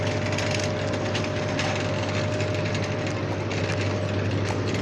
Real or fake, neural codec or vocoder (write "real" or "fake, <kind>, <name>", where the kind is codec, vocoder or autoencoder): real